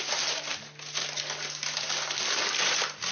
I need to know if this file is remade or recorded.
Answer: recorded